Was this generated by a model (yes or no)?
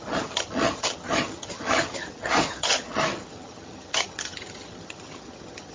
yes